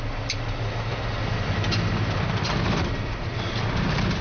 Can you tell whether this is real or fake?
real